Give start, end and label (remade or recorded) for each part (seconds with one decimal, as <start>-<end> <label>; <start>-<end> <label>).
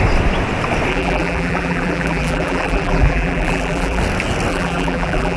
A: 0.0-0.9 recorded; 0.9-4.0 remade; 4.0-4.5 recorded; 4.5-5.4 remade